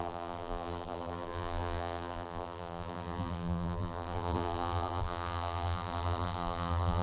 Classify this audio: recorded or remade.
remade